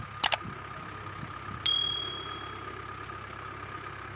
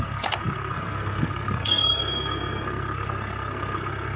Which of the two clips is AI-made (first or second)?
second